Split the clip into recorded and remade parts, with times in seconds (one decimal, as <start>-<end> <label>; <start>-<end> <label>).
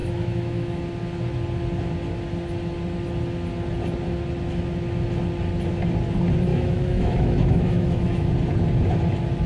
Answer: 0.0-0.8 remade; 0.8-6.5 recorded; 6.5-8.3 remade; 8.3-9.5 recorded